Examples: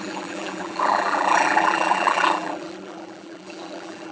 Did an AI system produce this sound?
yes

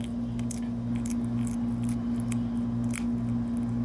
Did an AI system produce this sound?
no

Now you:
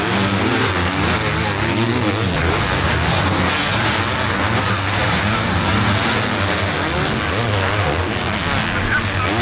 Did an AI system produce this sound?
no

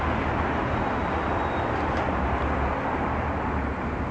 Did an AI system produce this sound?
no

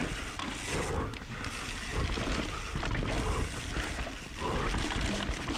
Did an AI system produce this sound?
no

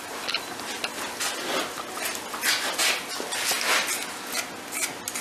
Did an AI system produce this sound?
no